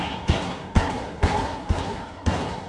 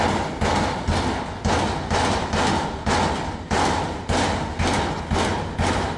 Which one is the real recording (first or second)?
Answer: second